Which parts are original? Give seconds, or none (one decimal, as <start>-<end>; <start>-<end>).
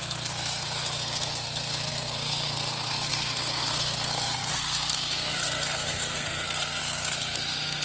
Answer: none